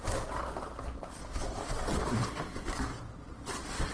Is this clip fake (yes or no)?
no